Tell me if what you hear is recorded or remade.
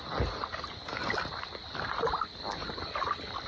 recorded